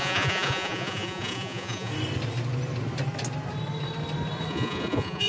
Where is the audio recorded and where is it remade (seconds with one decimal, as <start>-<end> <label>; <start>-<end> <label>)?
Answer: 0.0-1.9 remade; 1.9-4.5 recorded; 4.5-5.3 remade